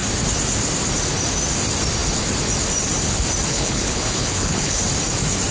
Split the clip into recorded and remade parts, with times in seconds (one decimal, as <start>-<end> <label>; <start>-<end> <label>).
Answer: 0.0-3.5 recorded; 3.5-4.8 remade; 4.8-5.5 recorded